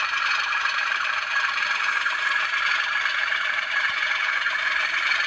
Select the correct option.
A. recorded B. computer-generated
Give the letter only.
B